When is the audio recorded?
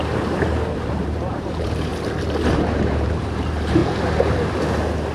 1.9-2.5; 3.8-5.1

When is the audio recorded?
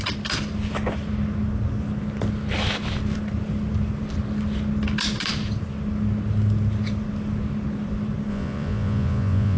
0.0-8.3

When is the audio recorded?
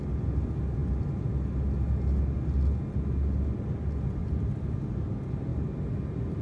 0.0-4.2; 4.7-6.4